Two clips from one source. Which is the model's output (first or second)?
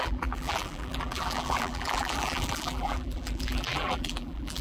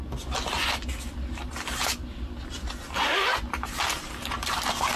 first